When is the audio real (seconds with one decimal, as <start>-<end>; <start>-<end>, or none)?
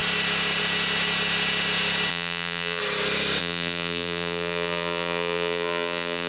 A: 0.0-2.1; 2.8-3.4